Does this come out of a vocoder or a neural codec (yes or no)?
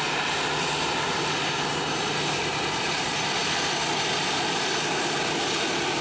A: no